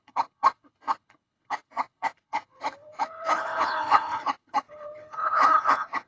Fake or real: fake